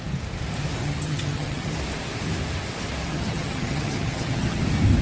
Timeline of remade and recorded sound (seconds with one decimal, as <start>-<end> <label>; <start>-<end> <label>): 0.0-0.8 recorded; 0.8-1.7 remade; 1.7-3.1 recorded; 3.1-4.6 remade; 4.6-5.0 recorded